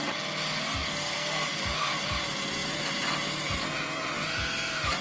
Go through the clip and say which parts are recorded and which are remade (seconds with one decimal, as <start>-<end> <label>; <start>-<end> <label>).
0.0-0.8 recorded; 0.8-1.6 remade; 1.6-5.0 recorded